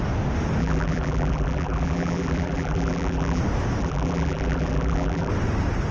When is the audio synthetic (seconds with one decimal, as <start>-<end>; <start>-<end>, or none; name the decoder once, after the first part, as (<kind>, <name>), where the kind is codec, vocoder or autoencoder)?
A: 0.6-3.4 (vocoder, BigVGAN v2); 3.8-5.3